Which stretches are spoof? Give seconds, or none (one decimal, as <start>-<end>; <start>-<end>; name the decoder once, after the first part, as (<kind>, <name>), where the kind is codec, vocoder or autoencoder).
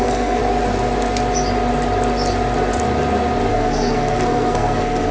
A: 0.0-0.4 (codec, SNAC); 3.5-5.1